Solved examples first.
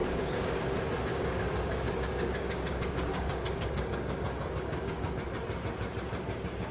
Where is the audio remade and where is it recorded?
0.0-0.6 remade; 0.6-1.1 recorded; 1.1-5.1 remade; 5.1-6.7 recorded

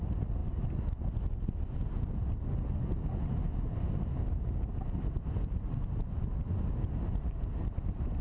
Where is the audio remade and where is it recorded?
0.0-8.2 recorded

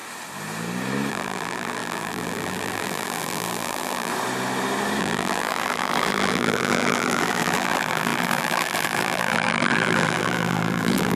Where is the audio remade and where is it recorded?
0.0-1.1 recorded; 1.1-4.1 remade; 4.1-5.0 recorded; 5.0-11.2 remade

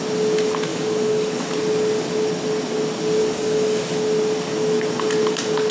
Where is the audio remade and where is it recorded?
0.0-0.7 recorded; 0.7-1.5 remade; 1.5-3.2 recorded; 3.2-3.8 remade; 3.8-5.7 recorded

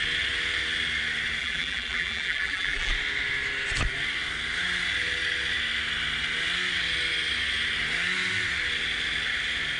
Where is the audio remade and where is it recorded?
0.0-1.4 recorded; 1.4-2.9 remade; 2.9-9.8 recorded

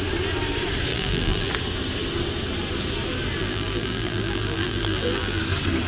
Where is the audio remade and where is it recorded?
0.0-0.9 recorded; 0.9-1.5 remade; 1.5-3.4 recorded; 3.4-5.4 remade; 5.4-5.9 recorded